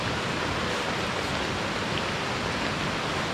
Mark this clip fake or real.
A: fake